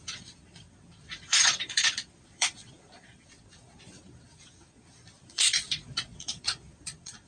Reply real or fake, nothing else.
fake